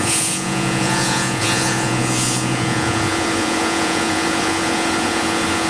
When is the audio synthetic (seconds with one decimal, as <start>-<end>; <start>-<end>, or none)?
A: 0.0-5.7